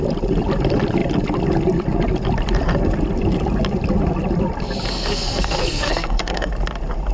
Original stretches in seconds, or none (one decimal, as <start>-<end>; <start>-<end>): 0.0-4.9; 6.5-7.1